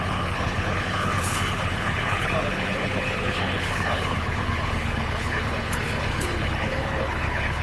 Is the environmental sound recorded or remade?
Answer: remade